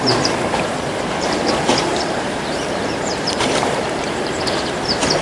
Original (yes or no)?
no